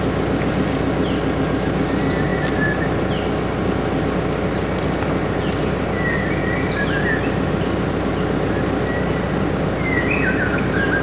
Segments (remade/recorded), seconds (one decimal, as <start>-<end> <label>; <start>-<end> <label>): 0.0-11.0 recorded